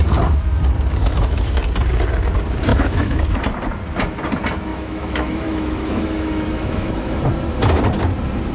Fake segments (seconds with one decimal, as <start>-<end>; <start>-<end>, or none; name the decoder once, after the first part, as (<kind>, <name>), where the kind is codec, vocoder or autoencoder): 1.0-1.6 (autoencoder, DAC-VAE); 2.7-3.4; 4.7-7.2